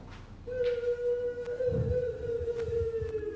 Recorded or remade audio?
recorded